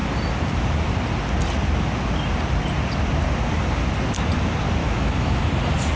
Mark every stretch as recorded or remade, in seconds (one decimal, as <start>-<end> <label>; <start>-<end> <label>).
0.0-4.8 recorded; 4.8-5.4 remade; 5.4-6.0 recorded